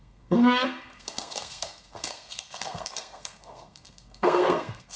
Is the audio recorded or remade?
remade